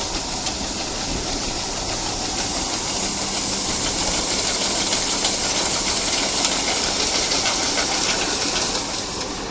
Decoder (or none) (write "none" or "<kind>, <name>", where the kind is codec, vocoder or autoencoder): none